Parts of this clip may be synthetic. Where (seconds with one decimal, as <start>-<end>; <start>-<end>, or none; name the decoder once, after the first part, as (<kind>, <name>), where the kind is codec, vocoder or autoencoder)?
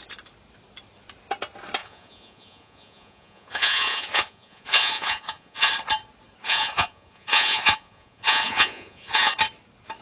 1.8-5.7 (vocoder, Vocos); 6.4-9.3